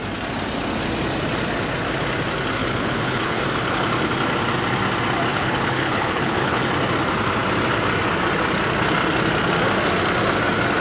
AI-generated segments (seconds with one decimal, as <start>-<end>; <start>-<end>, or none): 2.6-3.4; 5.3-6.6